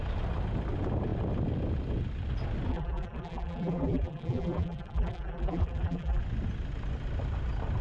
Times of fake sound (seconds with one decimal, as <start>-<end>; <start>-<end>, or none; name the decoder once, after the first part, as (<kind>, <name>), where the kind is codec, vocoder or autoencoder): 2.7-6.2 (vocoder, BigVGAN v2)